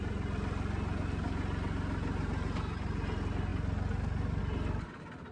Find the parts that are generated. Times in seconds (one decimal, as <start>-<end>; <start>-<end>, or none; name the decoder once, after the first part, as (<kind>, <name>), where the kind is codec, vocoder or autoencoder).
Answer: none